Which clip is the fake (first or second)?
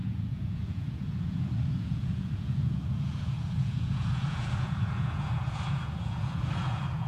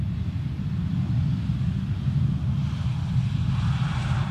first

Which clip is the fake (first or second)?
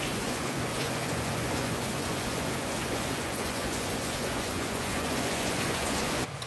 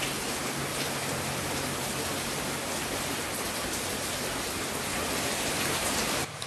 first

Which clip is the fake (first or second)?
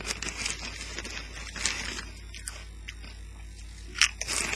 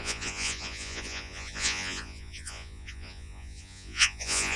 second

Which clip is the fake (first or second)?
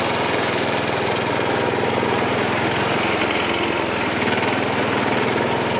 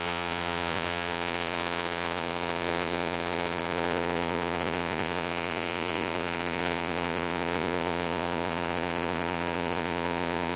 second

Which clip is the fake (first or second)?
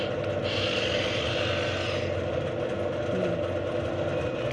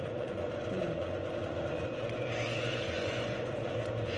second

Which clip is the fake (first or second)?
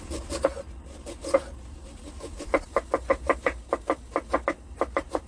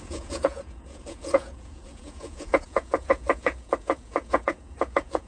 second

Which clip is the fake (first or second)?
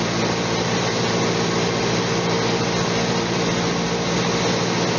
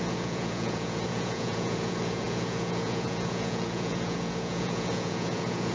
second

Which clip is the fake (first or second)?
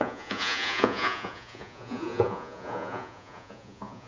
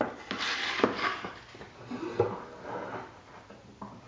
first